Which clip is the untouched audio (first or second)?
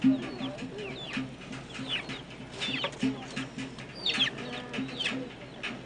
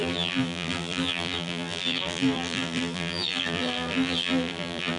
first